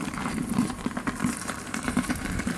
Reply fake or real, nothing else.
fake